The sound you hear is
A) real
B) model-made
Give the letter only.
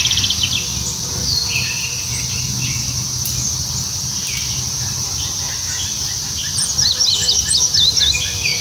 A